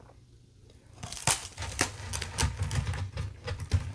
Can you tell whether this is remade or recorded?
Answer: recorded